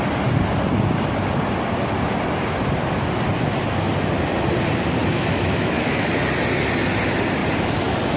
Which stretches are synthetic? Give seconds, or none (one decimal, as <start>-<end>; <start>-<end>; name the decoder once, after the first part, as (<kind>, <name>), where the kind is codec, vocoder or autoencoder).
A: 5.0-6.1 (autoencoder, DAC-VAE)